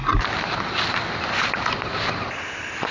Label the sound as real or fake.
real